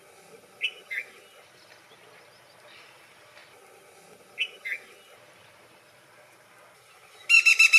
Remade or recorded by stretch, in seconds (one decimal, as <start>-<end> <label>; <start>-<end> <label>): 0.0-7.8 recorded